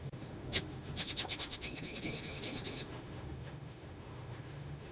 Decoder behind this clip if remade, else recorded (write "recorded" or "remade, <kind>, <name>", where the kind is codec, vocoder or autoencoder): remade, autoencoder, DAC-VAE